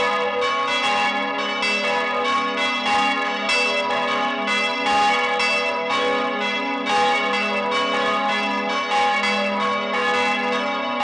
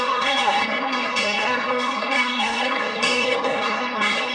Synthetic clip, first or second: second